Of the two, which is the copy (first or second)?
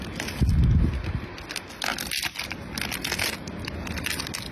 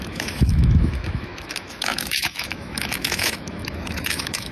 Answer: second